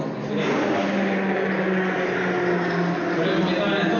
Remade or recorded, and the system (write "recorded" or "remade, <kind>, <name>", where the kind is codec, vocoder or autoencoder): recorded